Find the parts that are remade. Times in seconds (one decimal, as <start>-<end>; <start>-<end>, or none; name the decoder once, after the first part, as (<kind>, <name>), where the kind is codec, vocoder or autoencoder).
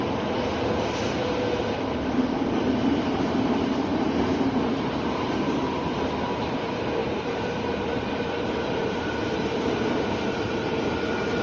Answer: 0.0-11.4 (vocoder, BigVGAN v2)